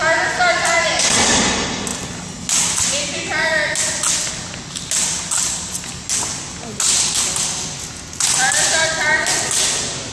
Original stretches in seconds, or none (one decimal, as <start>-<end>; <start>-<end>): 0.0-10.1